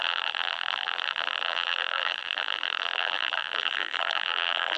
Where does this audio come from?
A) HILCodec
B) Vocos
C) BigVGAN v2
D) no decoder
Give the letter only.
C